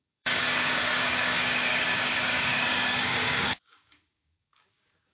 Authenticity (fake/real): fake